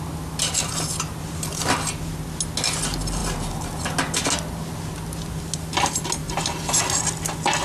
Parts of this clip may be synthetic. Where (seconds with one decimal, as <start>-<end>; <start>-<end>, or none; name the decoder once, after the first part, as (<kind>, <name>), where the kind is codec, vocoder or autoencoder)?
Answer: 6.2-6.8 (vocoder, BigVGAN v2)